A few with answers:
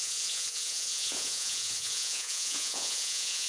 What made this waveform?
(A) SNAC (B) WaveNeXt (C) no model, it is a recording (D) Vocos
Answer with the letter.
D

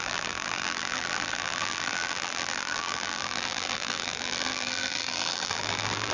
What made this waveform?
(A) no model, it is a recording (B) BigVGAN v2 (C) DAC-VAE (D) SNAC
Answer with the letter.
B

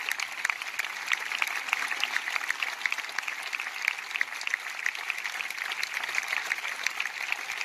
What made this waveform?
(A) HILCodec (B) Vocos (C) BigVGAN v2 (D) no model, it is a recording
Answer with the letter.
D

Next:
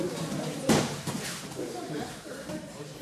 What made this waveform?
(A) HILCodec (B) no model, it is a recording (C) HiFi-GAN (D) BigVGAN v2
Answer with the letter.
D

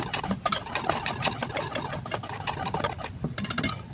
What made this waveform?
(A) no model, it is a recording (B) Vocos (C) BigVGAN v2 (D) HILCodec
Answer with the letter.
A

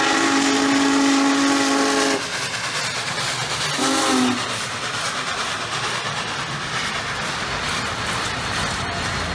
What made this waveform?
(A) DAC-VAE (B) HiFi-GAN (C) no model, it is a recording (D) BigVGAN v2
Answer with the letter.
C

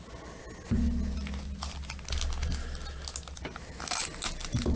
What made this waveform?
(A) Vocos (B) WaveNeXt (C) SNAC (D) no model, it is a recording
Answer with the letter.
D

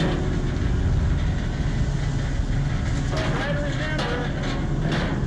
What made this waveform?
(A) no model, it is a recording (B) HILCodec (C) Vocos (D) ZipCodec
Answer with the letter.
A